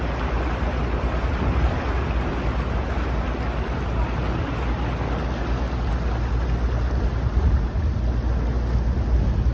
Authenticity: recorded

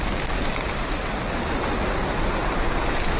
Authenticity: recorded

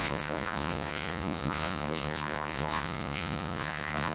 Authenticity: remade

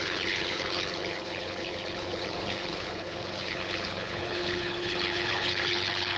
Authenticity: remade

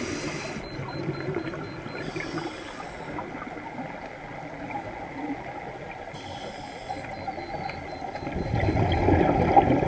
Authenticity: recorded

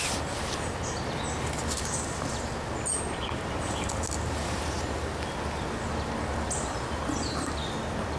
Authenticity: recorded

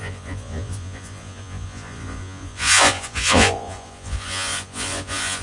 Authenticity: remade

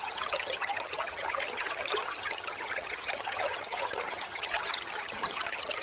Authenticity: remade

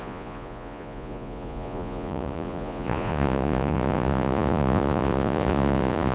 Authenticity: remade